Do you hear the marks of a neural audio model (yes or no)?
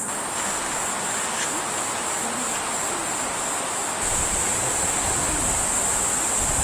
no